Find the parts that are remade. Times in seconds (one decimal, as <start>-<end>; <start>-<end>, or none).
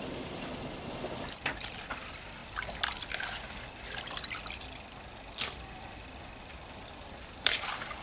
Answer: none